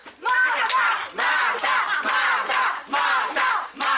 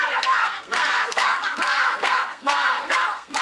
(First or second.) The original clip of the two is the first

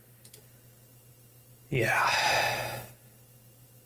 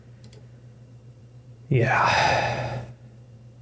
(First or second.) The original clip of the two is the first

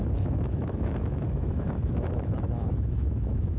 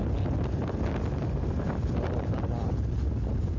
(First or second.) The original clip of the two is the second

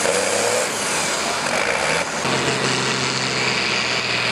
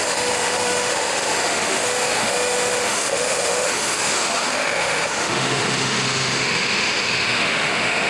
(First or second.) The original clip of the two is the first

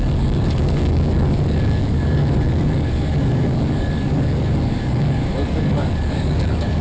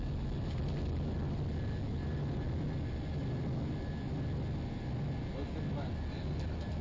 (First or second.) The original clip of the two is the second